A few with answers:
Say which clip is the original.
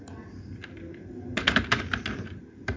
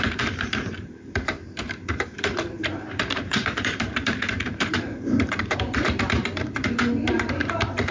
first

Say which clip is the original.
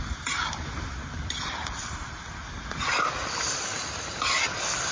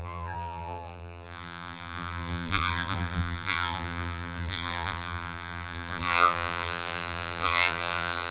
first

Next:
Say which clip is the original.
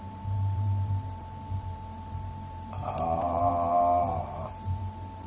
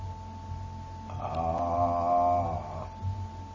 second